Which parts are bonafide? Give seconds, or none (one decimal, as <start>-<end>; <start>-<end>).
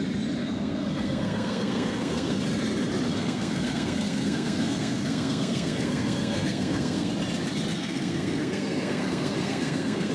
0.0-0.4; 2.4-3.1; 7.1-7.7